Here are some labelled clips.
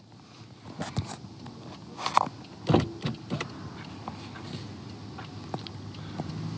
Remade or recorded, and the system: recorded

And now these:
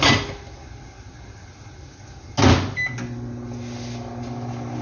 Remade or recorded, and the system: recorded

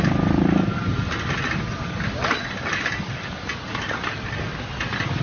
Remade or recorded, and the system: recorded